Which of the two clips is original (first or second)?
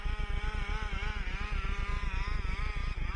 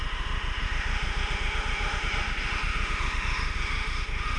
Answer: first